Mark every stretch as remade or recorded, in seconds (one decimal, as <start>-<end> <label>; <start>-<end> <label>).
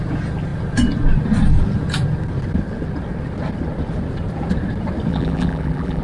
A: 0.0-5.1 recorded; 5.1-6.0 remade